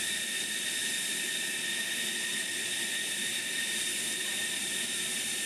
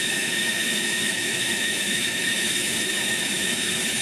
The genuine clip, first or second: first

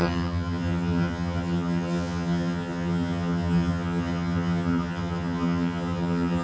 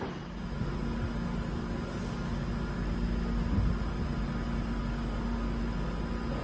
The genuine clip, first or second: second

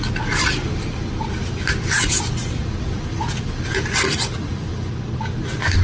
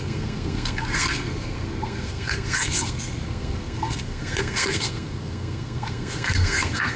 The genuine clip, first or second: first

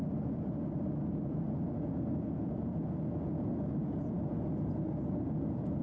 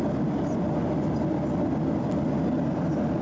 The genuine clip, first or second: second